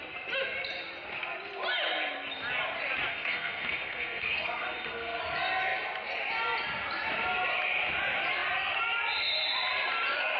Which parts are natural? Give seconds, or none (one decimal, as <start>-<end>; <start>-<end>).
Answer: 0.0-3.1; 5.2-10.4